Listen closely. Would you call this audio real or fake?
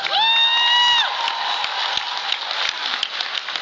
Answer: real